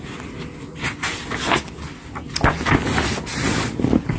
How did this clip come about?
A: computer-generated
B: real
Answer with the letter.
B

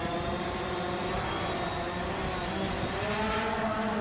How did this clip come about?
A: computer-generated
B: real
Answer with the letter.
B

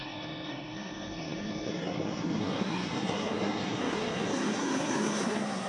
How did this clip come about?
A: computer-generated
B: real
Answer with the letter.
A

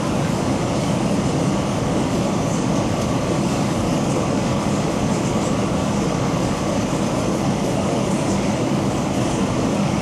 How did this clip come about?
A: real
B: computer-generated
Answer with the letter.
B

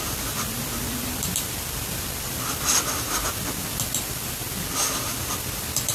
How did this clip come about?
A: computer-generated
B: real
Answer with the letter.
A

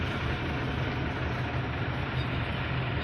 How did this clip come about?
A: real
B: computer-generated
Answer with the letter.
A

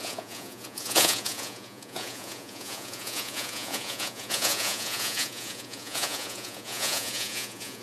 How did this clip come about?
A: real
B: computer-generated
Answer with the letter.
B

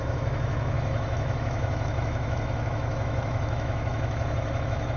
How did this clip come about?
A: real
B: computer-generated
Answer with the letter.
B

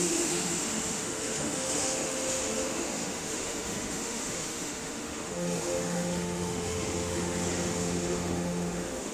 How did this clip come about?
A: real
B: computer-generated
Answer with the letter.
B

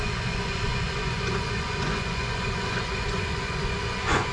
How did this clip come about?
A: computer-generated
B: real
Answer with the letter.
A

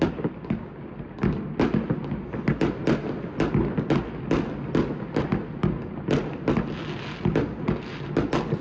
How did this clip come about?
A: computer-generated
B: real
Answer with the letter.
B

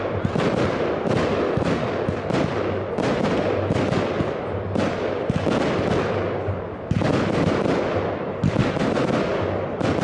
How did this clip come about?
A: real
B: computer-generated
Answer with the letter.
A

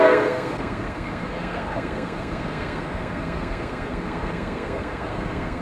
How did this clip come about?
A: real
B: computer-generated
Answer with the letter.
B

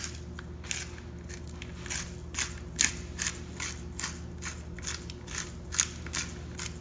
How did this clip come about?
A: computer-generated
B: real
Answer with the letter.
B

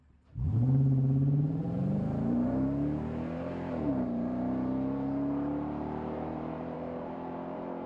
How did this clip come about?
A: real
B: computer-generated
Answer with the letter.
B